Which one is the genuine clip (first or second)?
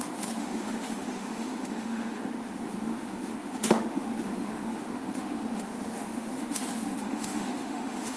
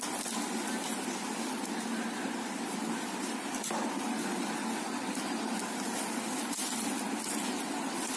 second